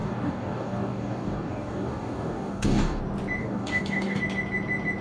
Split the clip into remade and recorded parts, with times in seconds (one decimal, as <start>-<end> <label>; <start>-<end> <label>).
0.0-3.0 remade; 3.0-3.4 recorded; 3.4-4.2 remade; 4.2-5.0 recorded